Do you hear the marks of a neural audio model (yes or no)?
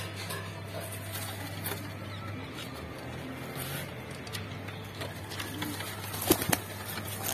no